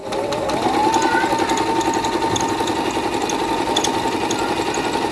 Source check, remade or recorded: recorded